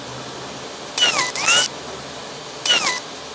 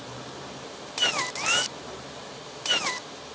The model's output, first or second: second